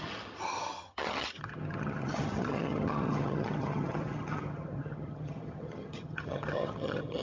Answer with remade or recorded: remade